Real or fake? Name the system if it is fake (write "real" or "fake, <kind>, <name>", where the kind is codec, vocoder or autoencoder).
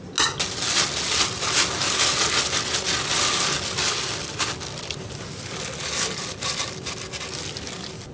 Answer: real